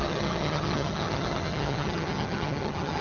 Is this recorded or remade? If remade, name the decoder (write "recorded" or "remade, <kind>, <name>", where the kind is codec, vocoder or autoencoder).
remade, vocoder, HiFi-GAN